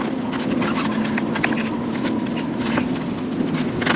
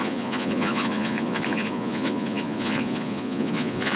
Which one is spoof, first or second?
second